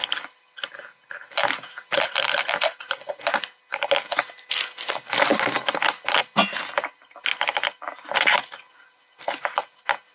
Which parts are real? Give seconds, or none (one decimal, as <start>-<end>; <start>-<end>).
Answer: 0.0-10.1